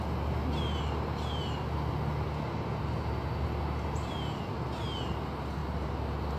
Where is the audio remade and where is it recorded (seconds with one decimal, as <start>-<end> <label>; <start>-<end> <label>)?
0.0-5.6 recorded; 5.6-6.4 remade